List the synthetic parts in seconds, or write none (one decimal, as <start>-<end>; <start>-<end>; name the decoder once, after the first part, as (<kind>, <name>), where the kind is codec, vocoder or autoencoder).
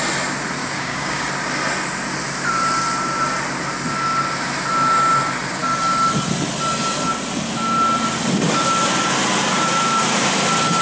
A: 0.6-1.3 (codec, DAC)